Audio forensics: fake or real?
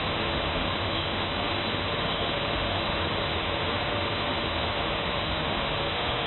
fake